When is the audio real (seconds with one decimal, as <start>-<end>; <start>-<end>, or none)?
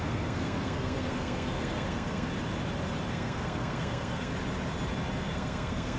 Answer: 2.3-3.1; 4.3-5.2